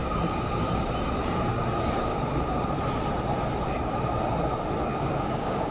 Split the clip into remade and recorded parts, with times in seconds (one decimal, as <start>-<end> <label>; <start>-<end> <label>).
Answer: 0.0-4.8 recorded; 4.8-5.7 remade